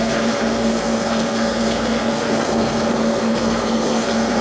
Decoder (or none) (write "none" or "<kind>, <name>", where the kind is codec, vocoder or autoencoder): codec, SNAC